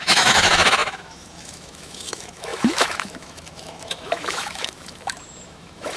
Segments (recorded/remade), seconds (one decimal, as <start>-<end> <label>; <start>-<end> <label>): 0.0-6.0 remade